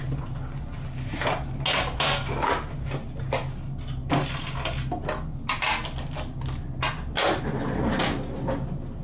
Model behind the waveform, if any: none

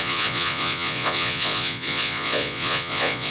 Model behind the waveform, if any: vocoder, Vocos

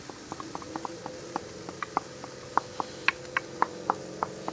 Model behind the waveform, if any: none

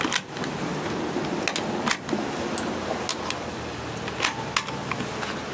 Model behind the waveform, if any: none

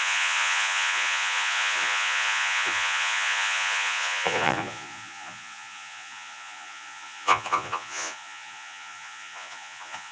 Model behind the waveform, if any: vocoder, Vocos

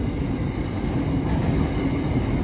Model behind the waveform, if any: none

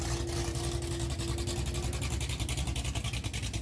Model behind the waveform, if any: none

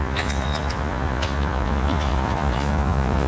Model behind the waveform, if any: vocoder, Vocos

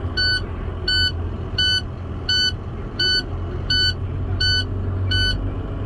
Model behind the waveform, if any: none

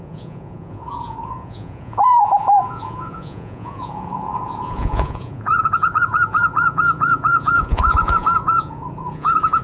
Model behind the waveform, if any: vocoder, Vocos